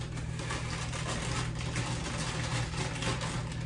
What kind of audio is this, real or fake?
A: real